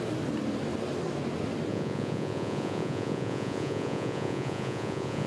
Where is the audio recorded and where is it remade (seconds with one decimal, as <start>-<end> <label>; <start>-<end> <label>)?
0.0-1.7 recorded; 1.7-5.3 remade